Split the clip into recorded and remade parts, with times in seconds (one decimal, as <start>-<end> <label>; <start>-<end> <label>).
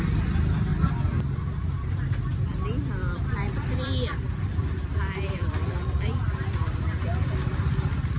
0.0-3.0 recorded; 3.0-8.2 remade